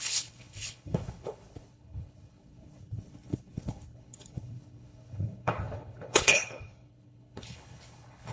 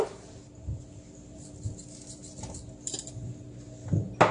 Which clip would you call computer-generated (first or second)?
first